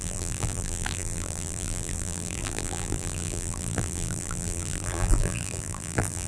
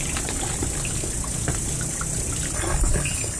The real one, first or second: second